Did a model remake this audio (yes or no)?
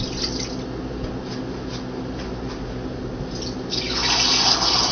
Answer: no